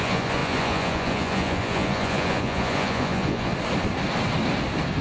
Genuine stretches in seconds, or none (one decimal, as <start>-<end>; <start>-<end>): 3.5-5.0